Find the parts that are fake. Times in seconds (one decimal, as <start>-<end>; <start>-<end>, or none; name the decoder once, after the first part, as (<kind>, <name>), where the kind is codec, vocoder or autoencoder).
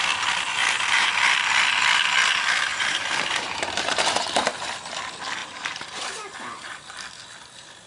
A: 0.6-1.1 (vocoder, BigVGAN v2); 2.7-5.0; 5.4-6.8